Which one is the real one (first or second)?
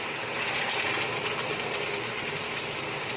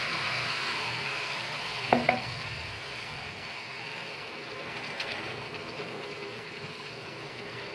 first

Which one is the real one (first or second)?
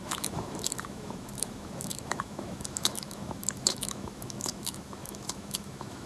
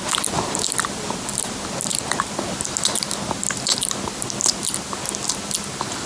second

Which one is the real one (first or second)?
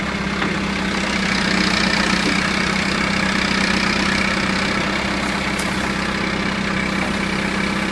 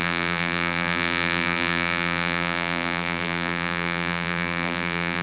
first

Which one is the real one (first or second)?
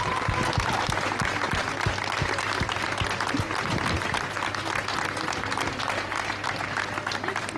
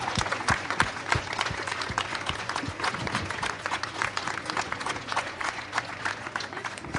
first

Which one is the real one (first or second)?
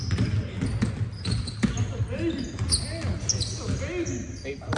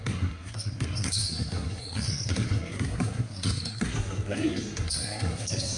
first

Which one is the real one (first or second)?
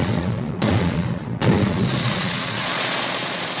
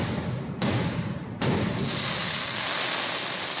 second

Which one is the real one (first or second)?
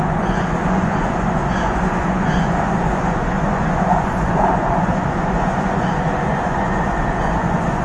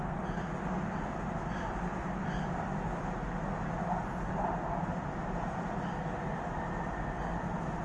second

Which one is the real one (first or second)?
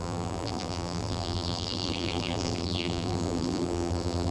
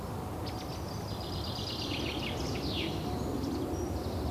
second